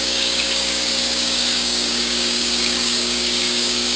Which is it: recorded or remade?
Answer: remade